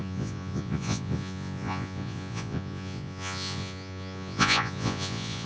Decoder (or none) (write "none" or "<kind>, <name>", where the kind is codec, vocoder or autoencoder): vocoder, Vocos